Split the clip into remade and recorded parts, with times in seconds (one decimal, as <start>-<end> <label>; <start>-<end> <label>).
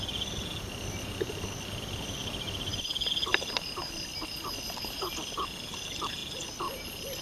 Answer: 0.0-4.1 recorded; 4.1-4.6 remade; 4.6-7.2 recorded